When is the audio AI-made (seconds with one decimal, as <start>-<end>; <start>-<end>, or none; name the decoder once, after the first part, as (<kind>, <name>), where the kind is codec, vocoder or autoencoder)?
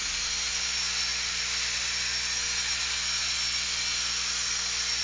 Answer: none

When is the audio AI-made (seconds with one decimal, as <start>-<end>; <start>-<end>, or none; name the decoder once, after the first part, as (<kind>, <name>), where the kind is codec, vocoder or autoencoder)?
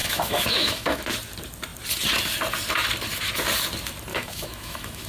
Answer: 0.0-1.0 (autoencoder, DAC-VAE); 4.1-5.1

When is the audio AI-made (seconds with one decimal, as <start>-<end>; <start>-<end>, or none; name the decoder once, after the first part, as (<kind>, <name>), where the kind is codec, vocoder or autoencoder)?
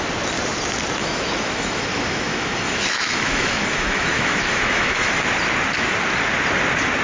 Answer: 1.0-5.2 (autoencoder, DAC-VAE)